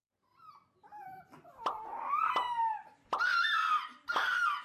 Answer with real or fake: real